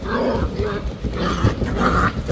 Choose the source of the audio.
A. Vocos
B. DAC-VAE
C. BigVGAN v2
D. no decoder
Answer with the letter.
D